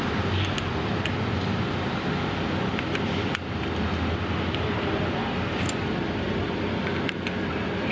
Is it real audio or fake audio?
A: real